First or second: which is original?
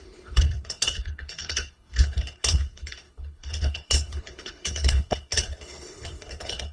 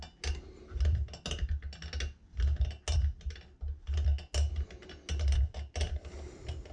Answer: second